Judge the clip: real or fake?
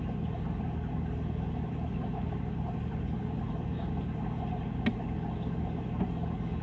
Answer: real